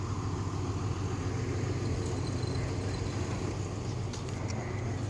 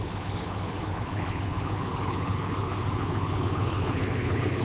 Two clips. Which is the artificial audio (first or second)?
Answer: second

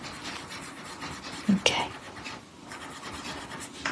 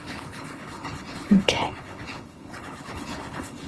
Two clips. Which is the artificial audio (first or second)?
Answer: second